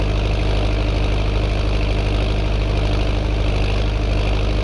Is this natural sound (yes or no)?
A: yes